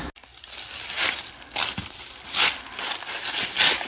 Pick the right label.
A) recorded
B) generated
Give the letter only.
A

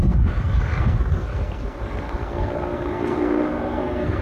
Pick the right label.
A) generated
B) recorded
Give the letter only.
A